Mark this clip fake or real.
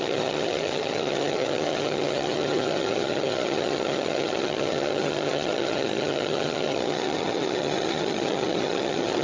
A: fake